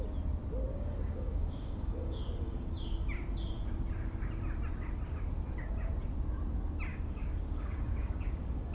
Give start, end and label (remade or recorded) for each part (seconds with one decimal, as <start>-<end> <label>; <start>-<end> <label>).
0.0-0.7 recorded; 0.7-2.7 remade; 2.7-6.9 recorded; 6.9-8.7 remade